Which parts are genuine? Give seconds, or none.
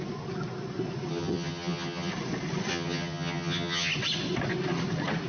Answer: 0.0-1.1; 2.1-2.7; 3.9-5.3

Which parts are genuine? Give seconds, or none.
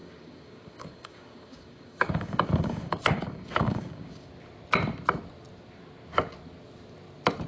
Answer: 4.3-7.5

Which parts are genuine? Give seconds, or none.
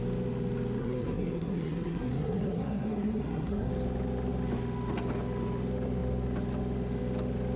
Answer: 0.0-0.8; 3.7-7.6